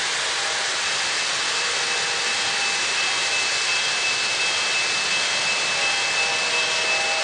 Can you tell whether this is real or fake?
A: real